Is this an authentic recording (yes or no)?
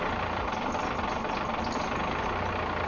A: yes